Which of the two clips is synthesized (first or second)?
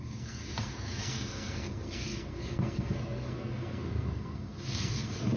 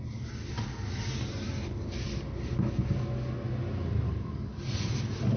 first